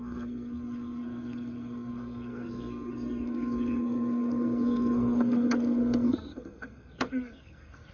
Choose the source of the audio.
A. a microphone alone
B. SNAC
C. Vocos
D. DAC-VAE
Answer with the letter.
B